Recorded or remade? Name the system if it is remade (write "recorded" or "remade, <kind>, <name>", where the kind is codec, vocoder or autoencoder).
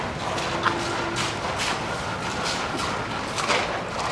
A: recorded